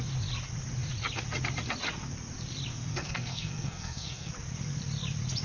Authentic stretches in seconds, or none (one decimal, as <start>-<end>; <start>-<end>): 0.0-2.9; 4.3-5.4